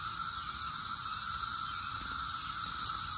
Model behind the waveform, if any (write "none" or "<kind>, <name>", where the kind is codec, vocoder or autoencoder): none